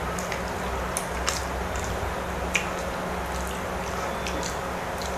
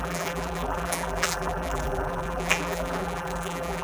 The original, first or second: first